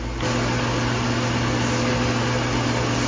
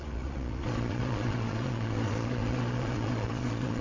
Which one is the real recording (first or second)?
first